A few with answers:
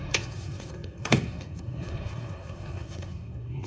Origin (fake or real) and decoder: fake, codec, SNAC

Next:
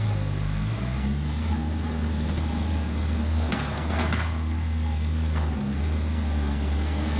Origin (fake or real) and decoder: fake, codec, SNAC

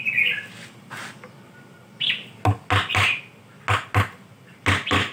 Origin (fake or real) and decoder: real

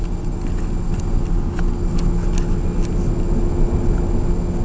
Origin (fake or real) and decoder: real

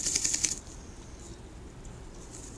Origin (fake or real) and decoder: real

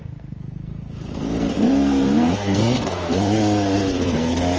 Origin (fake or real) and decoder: fake, codec, SNAC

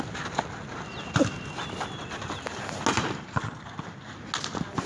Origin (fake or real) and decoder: real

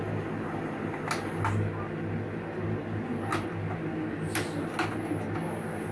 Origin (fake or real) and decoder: real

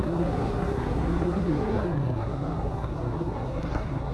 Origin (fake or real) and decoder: fake, codec, SNAC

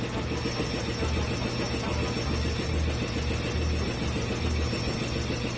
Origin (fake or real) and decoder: real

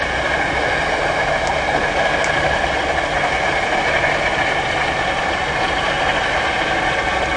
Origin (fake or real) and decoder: real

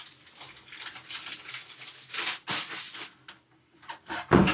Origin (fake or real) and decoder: real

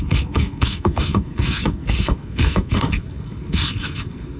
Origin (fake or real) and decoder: fake, codec, SNAC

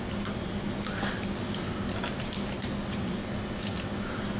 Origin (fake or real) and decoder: real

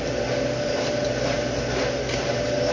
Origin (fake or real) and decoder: real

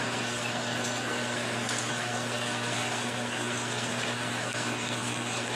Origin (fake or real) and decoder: fake, codec, SNAC